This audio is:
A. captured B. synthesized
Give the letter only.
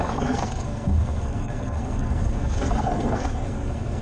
B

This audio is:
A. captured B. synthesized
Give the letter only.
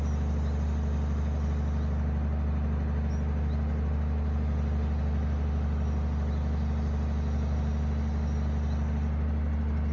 A